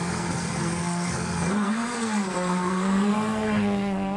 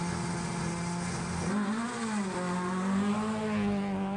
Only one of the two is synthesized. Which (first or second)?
first